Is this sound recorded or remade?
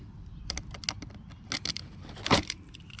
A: recorded